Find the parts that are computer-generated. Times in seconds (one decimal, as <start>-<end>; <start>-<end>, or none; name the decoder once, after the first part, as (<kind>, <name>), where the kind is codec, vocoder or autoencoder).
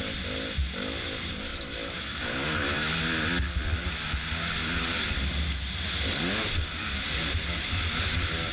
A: 1.5-3.0 (autoencoder, DAC-VAE)